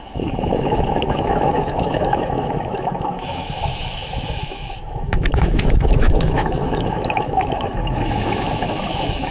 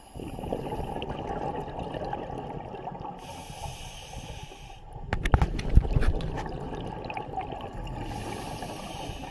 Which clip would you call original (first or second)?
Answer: second